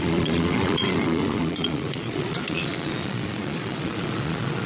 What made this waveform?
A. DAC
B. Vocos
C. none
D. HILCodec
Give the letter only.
B